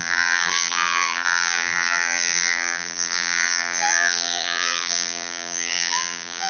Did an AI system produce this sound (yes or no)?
yes